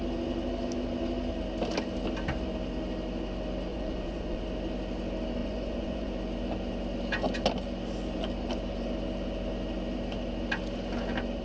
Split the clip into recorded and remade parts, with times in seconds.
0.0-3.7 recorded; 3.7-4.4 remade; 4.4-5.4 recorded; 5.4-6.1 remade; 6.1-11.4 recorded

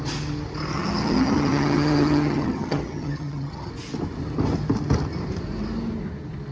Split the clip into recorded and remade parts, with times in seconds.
0.0-0.7 recorded; 0.7-3.7 remade; 3.7-6.5 recorded

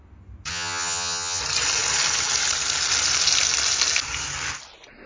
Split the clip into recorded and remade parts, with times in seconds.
0.0-0.5 recorded; 0.5-1.4 remade; 1.4-5.1 recorded

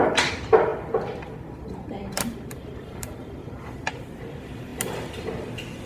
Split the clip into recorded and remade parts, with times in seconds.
0.0-0.7 recorded; 0.7-4.2 remade; 4.2-4.7 recorded; 4.7-5.3 remade; 5.3-5.9 recorded